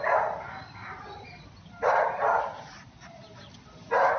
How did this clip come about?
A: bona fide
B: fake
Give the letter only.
B